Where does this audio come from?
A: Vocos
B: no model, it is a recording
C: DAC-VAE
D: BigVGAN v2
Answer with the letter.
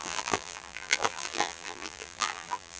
D